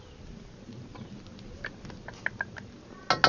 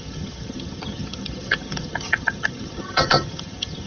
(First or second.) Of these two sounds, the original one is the first